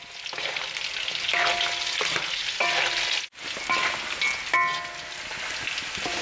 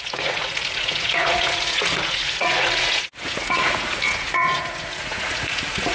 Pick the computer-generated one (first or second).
second